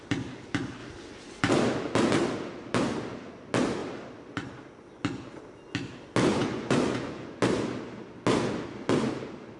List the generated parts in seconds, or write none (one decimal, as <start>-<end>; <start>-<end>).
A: 6.3-7.4